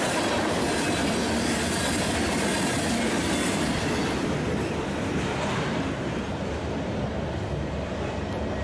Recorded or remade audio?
recorded